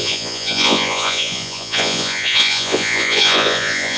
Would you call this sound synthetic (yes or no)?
yes